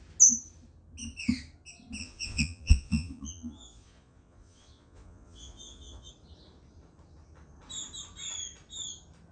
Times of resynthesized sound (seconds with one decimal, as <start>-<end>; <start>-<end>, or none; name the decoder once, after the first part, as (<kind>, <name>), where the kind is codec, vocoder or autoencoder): 2.0-6.1 (vocoder, Vocos)